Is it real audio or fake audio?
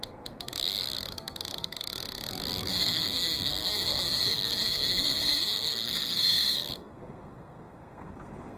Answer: fake